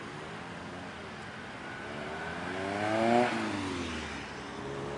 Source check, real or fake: real